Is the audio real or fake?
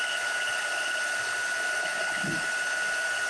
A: real